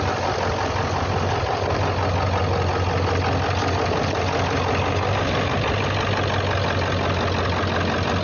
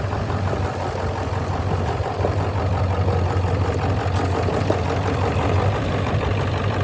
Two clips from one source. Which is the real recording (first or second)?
first